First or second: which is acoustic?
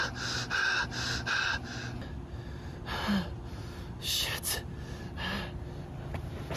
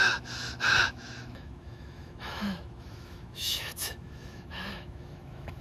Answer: first